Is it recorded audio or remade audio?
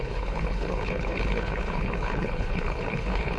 remade